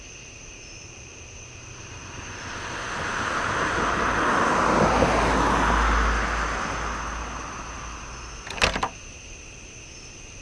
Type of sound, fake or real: real